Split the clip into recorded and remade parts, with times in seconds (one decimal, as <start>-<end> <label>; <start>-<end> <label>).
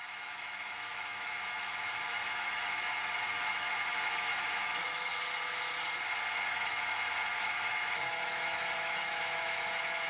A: 0.0-5.1 remade; 5.1-6.5 recorded; 6.5-6.9 remade; 6.9-7.4 recorded; 7.4-10.1 remade